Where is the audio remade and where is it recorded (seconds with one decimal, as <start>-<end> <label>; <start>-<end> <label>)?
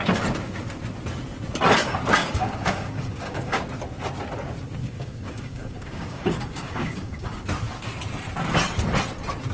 0.0-2.2 recorded; 2.2-3.6 remade; 3.6-4.8 recorded; 4.8-7.4 remade; 7.4-9.5 recorded